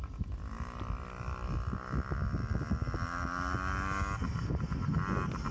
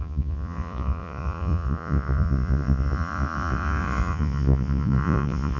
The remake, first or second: second